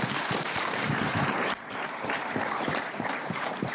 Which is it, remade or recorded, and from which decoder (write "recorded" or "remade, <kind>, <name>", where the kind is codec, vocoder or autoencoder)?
remade, vocoder, BigVGAN v2